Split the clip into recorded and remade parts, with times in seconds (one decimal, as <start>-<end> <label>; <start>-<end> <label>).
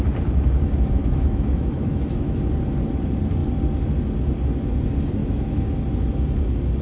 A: 0.0-1.0 recorded; 1.0-2.5 remade; 2.5-5.2 recorded; 5.2-5.8 remade; 5.8-6.8 recorded